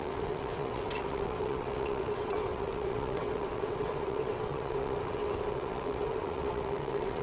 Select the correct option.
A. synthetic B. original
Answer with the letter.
A